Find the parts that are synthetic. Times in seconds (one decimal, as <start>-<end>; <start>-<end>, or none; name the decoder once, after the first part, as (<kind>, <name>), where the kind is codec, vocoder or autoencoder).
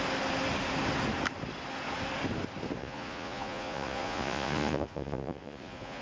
2.8-6.0 (vocoder, Vocos)